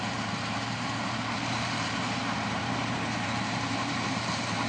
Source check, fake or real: fake